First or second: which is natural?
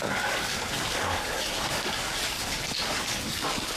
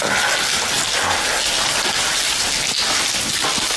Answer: second